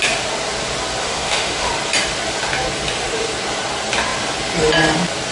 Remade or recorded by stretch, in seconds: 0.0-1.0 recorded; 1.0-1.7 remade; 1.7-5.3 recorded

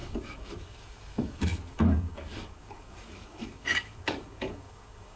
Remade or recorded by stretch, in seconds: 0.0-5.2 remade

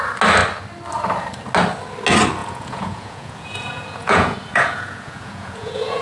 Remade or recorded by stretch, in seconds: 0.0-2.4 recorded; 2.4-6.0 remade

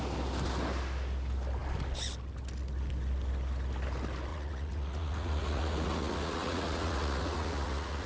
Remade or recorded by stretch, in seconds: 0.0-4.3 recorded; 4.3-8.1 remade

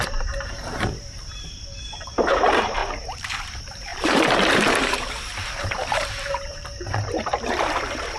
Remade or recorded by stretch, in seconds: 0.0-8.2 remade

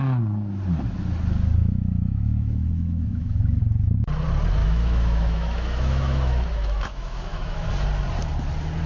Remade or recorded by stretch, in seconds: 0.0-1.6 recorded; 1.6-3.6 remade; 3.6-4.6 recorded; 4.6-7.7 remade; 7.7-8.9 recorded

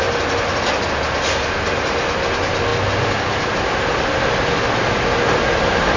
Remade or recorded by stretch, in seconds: 0.0-6.0 recorded

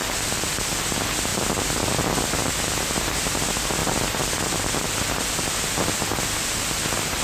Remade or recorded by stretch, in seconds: 0.0-0.8 remade; 0.8-3.8 recorded; 3.8-5.5 remade; 5.5-7.2 recorded